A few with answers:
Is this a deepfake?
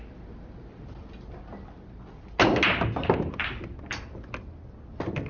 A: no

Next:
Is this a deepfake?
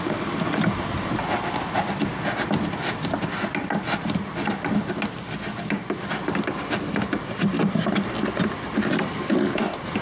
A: no